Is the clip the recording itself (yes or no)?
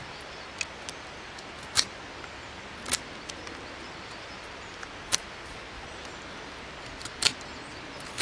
yes